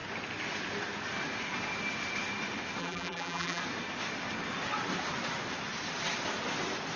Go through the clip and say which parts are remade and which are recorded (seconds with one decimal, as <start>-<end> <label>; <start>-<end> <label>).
0.0-2.8 recorded; 2.8-3.6 remade; 3.6-7.0 recorded